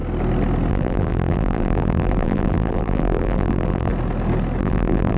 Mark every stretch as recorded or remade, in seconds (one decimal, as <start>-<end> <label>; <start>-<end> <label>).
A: 0.0-0.7 recorded; 0.7-3.9 remade; 3.9-4.6 recorded; 4.6-5.2 remade

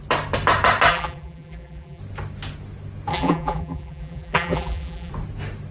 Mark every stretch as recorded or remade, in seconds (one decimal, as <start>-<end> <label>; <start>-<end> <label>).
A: 0.0-0.9 recorded; 0.9-2.0 remade; 2.0-3.1 recorded; 3.1-5.1 remade; 5.1-5.7 recorded

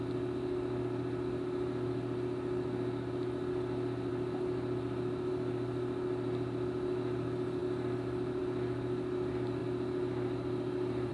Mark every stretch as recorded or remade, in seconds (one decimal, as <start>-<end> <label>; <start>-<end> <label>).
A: 0.0-4.1 recorded; 4.1-5.3 remade; 5.3-7.6 recorded; 7.6-8.4 remade; 8.4-9.6 recorded; 9.6-11.1 remade

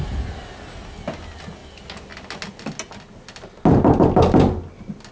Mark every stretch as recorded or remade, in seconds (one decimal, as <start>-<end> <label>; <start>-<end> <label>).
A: 0.0-5.1 recorded